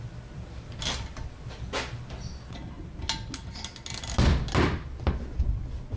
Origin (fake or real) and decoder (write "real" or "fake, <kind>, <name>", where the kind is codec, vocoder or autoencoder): real